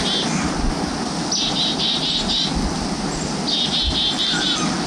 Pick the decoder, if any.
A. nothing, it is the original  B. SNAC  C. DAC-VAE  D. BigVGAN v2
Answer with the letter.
A